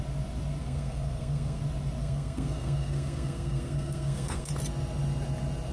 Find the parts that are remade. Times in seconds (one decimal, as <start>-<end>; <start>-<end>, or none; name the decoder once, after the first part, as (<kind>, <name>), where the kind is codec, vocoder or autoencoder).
0.6-1.6 (codec, SNAC); 2.0-4.5